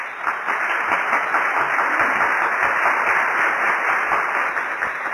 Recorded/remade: recorded